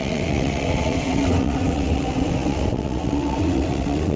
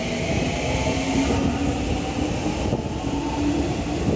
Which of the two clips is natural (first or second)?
second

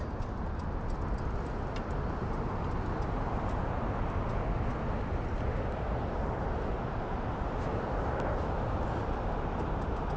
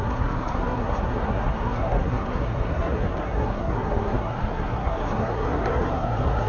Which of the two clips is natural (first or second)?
first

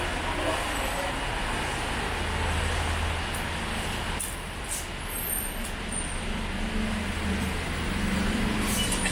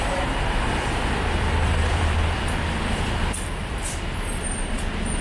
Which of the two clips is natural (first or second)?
first